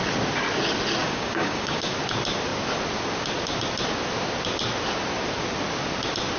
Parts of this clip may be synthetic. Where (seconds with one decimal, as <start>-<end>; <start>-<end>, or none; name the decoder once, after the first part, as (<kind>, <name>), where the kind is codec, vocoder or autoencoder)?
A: 1.0-1.9 (codec, DAC)